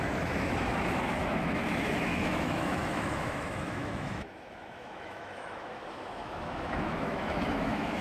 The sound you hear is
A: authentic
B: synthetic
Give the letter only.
B